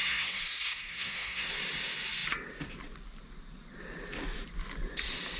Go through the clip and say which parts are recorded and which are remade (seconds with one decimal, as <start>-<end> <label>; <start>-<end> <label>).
0.0-1.5 remade; 1.5-5.4 recorded